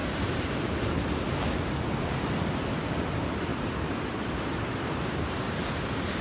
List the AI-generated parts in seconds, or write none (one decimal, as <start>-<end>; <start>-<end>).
0.0-1.1; 3.5-6.2